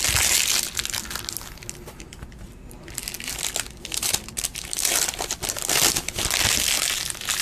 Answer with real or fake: real